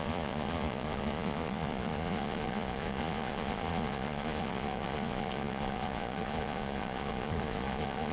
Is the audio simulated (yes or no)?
yes